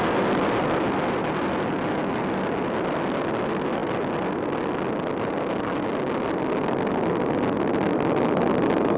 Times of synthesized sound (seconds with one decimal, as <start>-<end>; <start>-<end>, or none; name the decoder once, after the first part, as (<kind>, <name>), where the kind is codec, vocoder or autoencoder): none